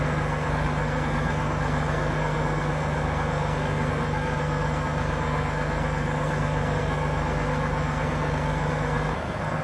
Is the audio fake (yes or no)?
yes